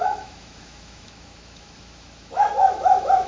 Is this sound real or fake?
fake